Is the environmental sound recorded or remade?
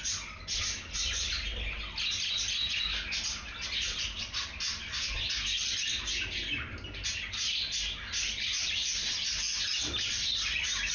recorded